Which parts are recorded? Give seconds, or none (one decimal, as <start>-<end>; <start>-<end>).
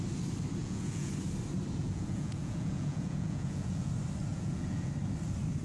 0.0-0.6; 1.1-1.8; 3.9-4.3; 4.9-5.6